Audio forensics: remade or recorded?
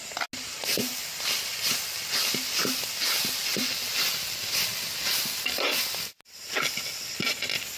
recorded